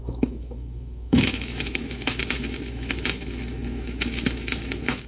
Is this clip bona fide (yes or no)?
no